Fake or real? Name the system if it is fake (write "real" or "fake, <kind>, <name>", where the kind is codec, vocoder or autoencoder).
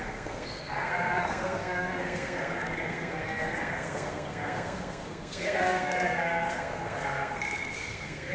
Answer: fake, codec, SNAC